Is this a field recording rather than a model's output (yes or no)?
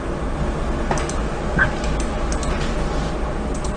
yes